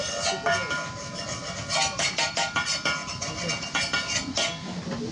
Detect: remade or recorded recorded